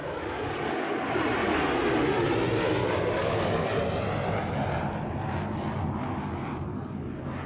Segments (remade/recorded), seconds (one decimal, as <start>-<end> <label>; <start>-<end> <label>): 0.0-1.2 remade; 1.2-2.8 recorded; 2.8-3.8 remade; 3.8-6.7 recorded; 6.7-7.5 remade